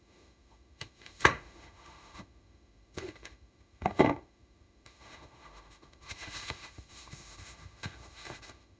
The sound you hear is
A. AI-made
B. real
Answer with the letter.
A